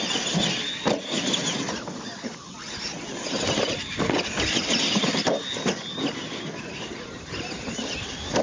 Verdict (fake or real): real